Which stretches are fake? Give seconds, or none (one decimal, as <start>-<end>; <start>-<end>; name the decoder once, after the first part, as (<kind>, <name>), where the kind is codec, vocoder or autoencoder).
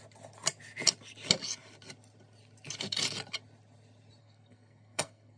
4.2-5.4 (codec, SNAC)